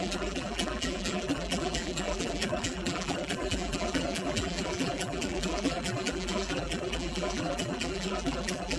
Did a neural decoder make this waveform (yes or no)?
yes